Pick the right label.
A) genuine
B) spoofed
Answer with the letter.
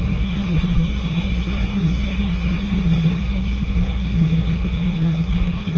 B